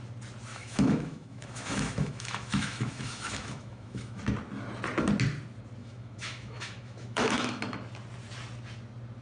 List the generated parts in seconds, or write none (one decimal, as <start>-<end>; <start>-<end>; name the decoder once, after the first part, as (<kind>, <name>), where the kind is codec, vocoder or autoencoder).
0.5-4.2 (autoencoder, DAC-VAE); 5.8-7.6